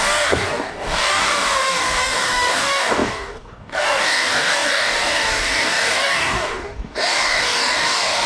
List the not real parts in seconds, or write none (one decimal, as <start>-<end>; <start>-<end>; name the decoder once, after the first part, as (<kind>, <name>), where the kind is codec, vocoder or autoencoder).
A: 0.0-8.3 (codec, DAC)